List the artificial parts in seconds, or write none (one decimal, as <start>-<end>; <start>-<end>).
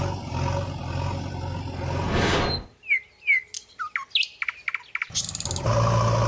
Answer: none